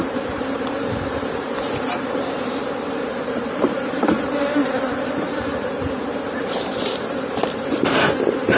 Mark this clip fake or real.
fake